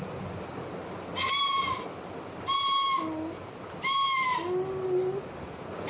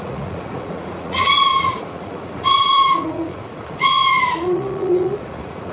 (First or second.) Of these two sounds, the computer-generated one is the second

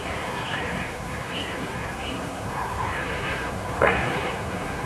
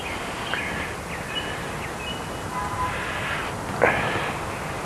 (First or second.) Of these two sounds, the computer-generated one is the first